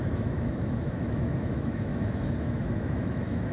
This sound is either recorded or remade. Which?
remade